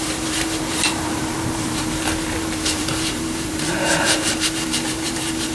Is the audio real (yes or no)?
no